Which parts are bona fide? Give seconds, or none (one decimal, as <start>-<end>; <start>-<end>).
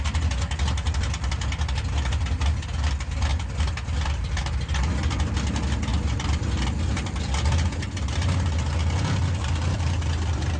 0.0-3.3; 4.3-5.9; 8.4-10.6